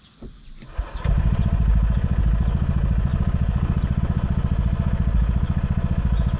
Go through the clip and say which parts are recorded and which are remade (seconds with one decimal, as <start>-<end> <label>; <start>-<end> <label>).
0.0-6.4 recorded